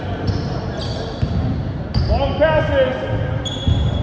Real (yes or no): yes